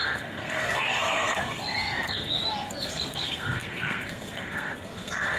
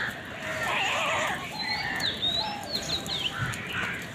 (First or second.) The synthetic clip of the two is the first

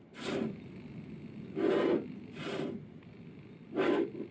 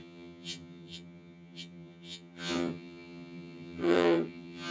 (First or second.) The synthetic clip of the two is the second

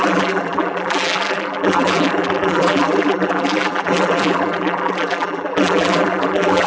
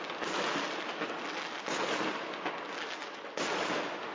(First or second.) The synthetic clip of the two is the first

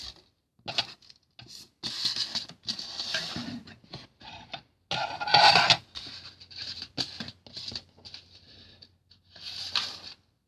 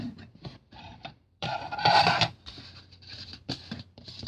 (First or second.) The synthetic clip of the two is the second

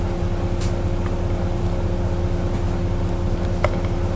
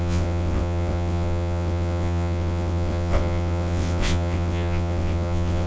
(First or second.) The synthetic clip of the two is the second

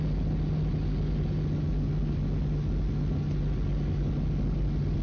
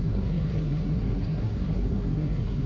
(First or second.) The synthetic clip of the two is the second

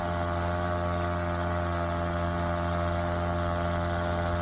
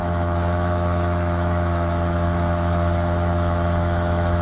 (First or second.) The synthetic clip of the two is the second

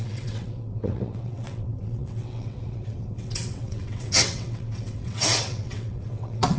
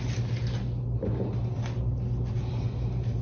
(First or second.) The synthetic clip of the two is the first